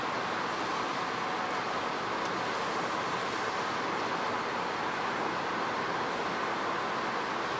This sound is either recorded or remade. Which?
recorded